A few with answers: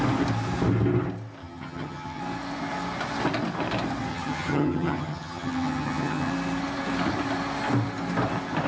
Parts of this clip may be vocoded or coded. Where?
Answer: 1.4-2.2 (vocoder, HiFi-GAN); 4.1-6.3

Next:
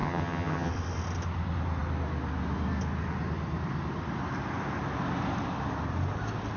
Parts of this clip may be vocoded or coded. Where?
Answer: 0.0-0.7 (vocoder, HiFi-GAN)

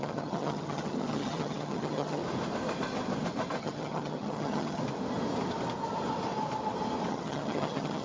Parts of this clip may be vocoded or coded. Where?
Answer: 0.0-2.2 (vocoder, HiFi-GAN); 3.6-4.8; 7.1-8.0

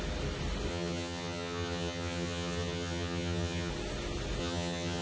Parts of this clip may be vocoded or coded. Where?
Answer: 0.7-3.7 (vocoder, HiFi-GAN); 4.4-5.0

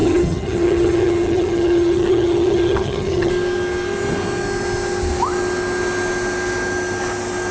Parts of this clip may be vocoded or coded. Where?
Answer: 0.0-3.3 (vocoder, HiFi-GAN)

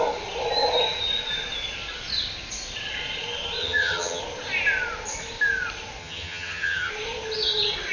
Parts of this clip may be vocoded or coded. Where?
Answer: 3.6-4.2 (vocoder, HiFi-GAN); 6.0-6.9